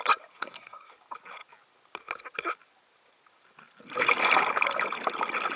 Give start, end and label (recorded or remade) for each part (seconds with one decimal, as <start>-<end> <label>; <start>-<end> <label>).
0.0-0.4 recorded; 0.4-0.9 remade; 0.9-5.6 recorded